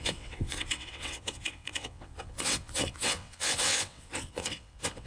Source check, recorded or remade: remade